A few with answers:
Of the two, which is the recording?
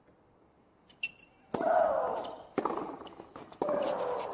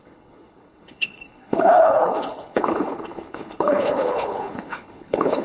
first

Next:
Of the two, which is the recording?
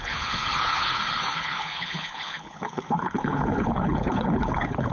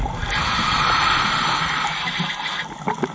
second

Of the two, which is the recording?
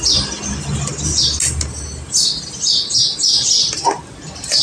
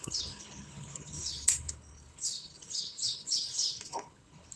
first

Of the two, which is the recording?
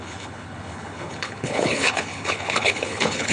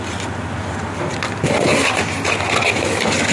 second